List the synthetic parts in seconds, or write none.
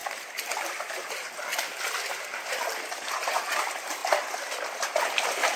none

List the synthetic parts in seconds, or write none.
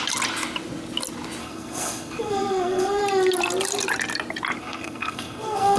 1.4-3.0; 4.6-5.8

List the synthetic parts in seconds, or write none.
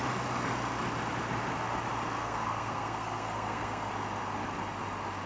2.2-3.9